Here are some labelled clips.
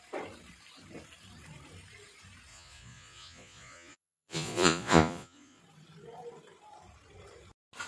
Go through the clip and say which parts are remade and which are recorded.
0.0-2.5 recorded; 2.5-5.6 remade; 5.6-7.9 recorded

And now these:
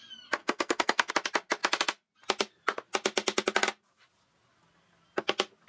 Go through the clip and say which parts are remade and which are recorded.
0.0-0.4 recorded; 0.4-1.1 remade; 1.1-5.7 recorded

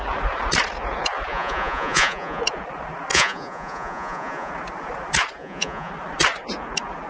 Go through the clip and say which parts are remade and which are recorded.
0.0-1.3 recorded; 1.3-2.4 remade; 2.4-3.1 recorded; 3.1-4.5 remade; 4.5-5.4 recorded; 5.4-5.9 remade; 5.9-7.1 recorded

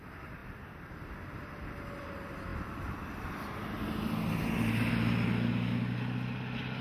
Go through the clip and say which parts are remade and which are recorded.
0.0-6.8 recorded